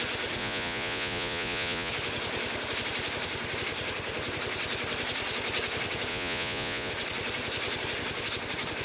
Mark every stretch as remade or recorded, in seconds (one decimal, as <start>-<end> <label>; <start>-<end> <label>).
0.0-0.4 recorded; 0.4-1.9 remade; 1.9-6.1 recorded; 6.1-6.9 remade; 6.9-8.8 recorded